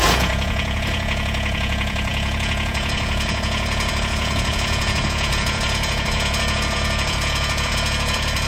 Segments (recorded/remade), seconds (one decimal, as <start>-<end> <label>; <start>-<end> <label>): 0.0-8.5 remade